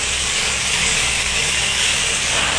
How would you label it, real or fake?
fake